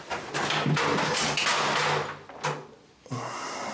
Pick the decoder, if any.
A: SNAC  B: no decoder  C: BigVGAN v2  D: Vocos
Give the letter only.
B